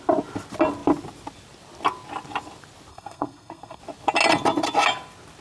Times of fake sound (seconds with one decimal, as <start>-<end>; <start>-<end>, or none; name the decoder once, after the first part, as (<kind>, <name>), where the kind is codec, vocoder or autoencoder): 2.9-3.8 (codec, SNAC)

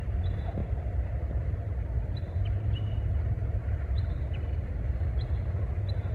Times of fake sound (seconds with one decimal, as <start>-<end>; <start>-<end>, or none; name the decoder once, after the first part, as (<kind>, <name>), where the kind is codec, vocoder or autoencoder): 3.4-4.7 (vocoder, BigVGAN v2)